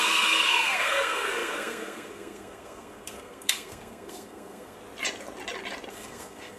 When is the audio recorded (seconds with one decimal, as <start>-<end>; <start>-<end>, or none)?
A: 4.8-5.9